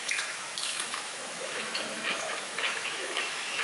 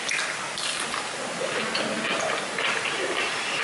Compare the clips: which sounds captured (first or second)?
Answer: second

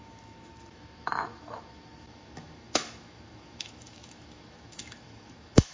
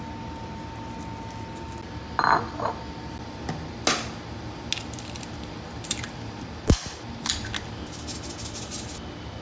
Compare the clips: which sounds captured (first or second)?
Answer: second